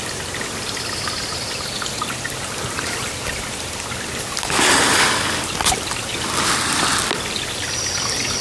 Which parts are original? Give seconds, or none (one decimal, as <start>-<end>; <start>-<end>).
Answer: 0.0-8.4